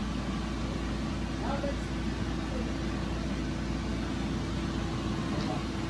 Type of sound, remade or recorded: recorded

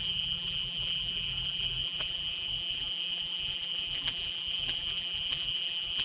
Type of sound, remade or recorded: remade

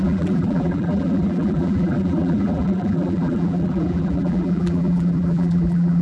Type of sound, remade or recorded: remade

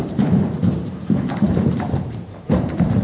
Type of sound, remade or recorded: remade